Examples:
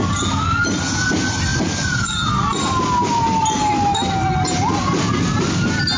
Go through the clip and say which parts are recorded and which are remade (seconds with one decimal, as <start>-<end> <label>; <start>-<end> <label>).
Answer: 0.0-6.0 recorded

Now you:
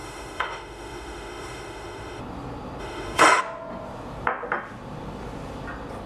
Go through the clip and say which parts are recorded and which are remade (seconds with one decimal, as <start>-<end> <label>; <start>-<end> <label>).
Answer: 0.0-2.2 remade; 2.2-2.8 recorded; 2.8-3.4 remade; 3.4-6.1 recorded

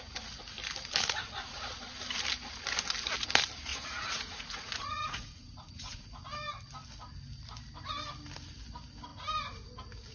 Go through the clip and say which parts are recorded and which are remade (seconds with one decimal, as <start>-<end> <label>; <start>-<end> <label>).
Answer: 0.0-3.7 recorded; 3.7-6.1 remade; 6.1-10.1 recorded

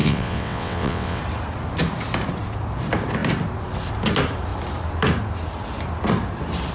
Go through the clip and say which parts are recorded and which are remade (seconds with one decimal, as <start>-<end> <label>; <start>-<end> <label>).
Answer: 0.0-1.2 remade; 1.2-6.7 recorded

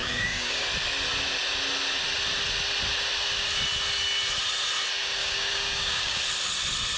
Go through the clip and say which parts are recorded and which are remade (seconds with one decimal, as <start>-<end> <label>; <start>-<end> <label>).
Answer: 0.0-0.6 remade; 0.6-5.2 recorded; 5.2-6.2 remade; 6.2-7.0 recorded